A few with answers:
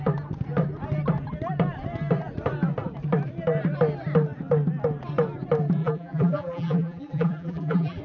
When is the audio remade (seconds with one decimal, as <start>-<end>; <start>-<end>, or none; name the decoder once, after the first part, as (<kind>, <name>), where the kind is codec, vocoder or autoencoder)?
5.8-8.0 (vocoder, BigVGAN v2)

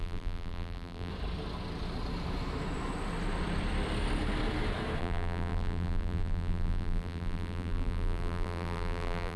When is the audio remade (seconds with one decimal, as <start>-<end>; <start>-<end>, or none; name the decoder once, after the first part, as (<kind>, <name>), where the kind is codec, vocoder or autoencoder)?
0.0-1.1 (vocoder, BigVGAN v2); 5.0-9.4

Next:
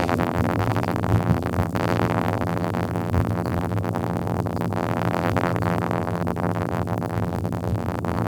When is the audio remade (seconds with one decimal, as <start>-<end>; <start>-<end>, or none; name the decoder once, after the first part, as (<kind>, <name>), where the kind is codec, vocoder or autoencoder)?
0.0-8.3 (vocoder, BigVGAN v2)

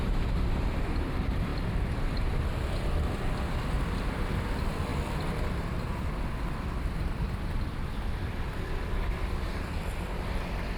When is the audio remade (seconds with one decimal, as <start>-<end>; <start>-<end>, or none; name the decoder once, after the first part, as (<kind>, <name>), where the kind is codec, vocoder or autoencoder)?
0.0-4.9 (vocoder, BigVGAN v2); 5.5-10.8

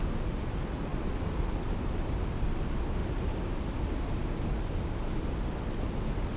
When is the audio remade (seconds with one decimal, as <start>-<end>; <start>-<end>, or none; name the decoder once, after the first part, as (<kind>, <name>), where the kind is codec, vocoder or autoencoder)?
3.0-3.6 (vocoder, BigVGAN v2)

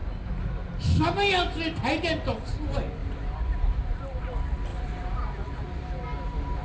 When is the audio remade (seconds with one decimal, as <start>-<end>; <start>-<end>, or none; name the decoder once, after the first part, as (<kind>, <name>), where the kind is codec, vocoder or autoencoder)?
3.0-4.2 (vocoder, BigVGAN v2); 4.7-6.0

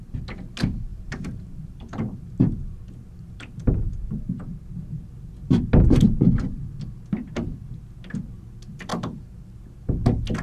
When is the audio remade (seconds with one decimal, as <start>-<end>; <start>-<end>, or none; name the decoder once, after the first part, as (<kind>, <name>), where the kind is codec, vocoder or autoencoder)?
0.9-4.2 (vocoder, BigVGAN v2); 8.9-9.5

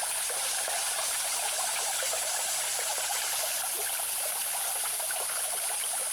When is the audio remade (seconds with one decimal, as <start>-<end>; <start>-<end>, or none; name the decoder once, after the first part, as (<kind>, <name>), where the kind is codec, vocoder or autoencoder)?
2.7-3.6 (vocoder, BigVGAN v2)